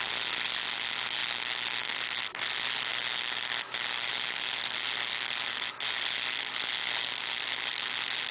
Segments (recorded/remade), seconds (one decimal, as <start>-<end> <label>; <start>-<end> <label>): 0.0-2.9 recorded; 2.9-4.1 remade; 4.1-8.3 recorded